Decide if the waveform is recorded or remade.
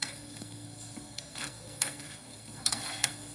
remade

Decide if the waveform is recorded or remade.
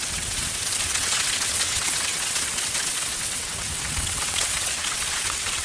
remade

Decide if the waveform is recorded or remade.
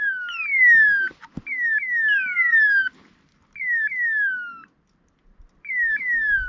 recorded